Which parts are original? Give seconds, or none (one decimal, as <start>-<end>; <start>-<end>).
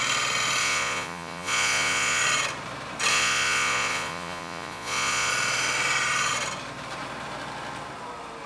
0.0-0.6; 2.2-3.1; 5.3-8.5